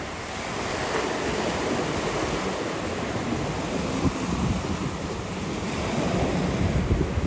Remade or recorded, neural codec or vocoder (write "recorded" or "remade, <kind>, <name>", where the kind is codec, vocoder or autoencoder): recorded